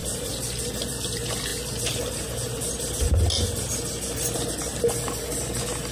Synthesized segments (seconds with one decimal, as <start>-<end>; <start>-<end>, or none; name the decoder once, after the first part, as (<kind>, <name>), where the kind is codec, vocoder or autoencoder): none